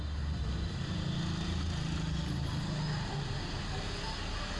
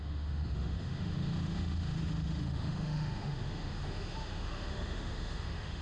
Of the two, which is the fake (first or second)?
second